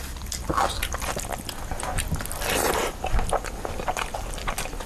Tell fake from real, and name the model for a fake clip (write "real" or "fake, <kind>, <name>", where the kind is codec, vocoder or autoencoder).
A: real